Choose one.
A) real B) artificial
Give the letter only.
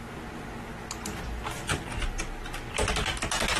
A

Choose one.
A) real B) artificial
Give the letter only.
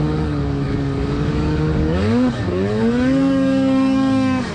B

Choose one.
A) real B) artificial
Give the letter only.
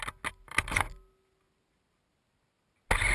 A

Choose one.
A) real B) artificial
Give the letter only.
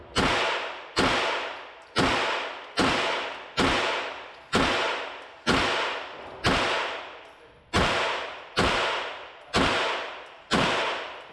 A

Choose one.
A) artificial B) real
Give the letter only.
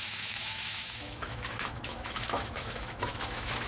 A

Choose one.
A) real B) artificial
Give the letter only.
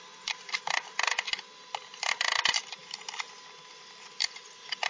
A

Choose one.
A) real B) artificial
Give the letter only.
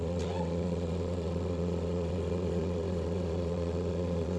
B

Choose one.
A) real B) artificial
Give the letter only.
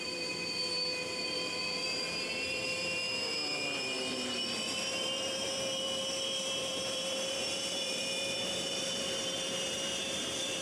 B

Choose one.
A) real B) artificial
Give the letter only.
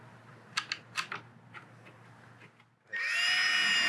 A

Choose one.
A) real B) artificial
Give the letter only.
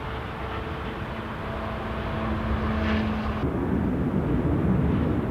A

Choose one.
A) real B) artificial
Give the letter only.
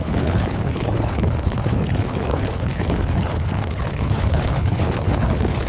B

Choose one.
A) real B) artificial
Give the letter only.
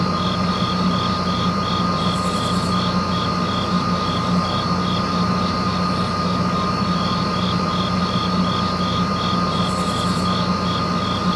A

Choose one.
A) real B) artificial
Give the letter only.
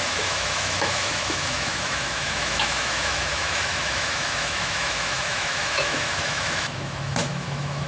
B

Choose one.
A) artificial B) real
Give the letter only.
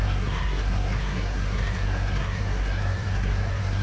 A